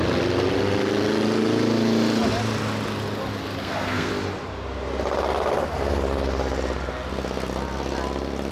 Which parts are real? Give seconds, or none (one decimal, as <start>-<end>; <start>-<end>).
0.0-3.6; 4.1-8.5